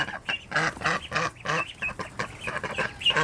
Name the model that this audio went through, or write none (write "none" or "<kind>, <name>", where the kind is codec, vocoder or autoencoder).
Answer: none